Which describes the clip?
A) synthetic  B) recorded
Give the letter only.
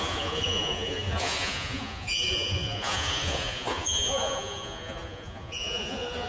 A